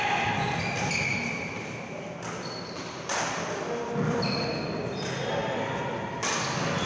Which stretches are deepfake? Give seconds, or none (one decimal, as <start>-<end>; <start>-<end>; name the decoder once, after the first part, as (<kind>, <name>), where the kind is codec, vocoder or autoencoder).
none